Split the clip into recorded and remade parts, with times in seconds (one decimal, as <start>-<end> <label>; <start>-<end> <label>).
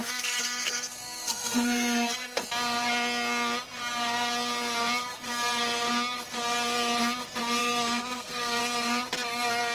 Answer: 0.0-2.4 remade; 2.4-7.6 recorded; 7.6-8.6 remade; 8.6-9.7 recorded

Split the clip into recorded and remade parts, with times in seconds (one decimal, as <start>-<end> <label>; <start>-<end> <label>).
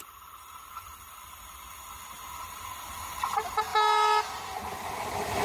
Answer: 0.0-5.4 recorded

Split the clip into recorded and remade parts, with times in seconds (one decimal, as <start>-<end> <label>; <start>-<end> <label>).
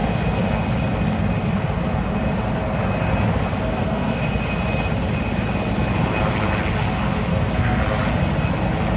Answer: 0.0-3.7 recorded; 3.7-4.2 remade; 4.2-7.3 recorded; 7.3-7.8 remade; 7.8-9.0 recorded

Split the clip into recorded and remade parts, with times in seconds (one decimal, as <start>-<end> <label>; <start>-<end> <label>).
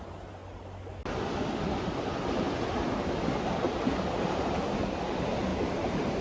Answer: 0.0-0.4 remade; 0.4-4.1 recorded; 4.1-6.2 remade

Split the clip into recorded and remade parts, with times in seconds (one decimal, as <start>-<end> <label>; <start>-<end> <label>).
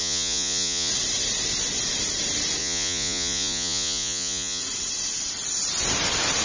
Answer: 0.0-0.9 remade; 0.9-2.6 recorded; 2.6-4.6 remade; 4.6-6.4 recorded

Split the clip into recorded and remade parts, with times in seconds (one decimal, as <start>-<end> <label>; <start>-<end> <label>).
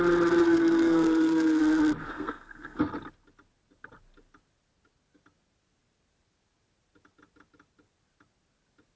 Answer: 0.0-0.4 recorded; 0.4-1.6 remade; 1.6-2.0 recorded; 2.0-2.8 remade; 2.8-9.0 recorded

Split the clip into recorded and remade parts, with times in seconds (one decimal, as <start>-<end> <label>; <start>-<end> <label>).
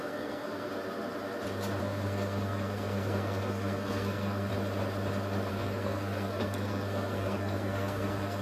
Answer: 0.0-0.7 remade; 0.7-1.8 recorded; 1.8-4.5 remade; 4.5-5.5 recorded; 5.5-8.4 remade